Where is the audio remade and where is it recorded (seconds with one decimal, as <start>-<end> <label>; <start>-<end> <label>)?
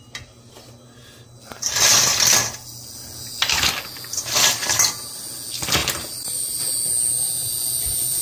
0.0-5.8 recorded; 5.8-6.6 remade; 6.6-8.2 recorded